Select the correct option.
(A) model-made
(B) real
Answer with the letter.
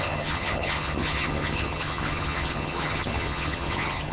A